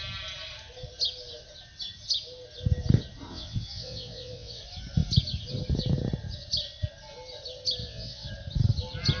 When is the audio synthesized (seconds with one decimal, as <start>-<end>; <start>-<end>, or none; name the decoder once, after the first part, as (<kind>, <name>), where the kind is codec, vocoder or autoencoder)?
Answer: 3.3-4.6 (vocoder, WaveNeXt); 7.8-8.3